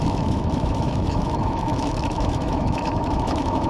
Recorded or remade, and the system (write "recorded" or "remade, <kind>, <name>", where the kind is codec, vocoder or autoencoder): remade, autoencoder, DAC-VAE